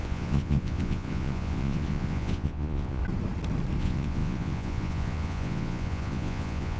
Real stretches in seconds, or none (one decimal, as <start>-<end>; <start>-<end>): 3.0-3.8